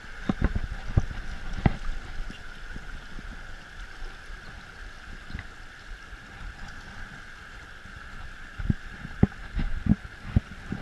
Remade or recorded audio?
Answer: recorded